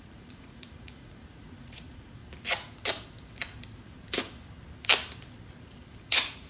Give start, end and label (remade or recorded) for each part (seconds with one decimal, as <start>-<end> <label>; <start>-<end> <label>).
0.0-2.2 remade; 2.2-6.1 recorded; 6.1-6.5 remade